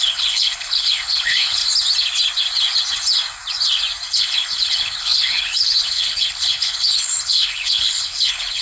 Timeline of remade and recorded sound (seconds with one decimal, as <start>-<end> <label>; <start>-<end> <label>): 0.0-1.6 remade; 1.6-4.1 recorded; 4.1-8.6 remade